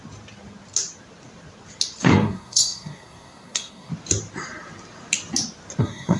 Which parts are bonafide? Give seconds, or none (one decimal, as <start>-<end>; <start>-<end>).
0.0-2.0; 3.9-5.8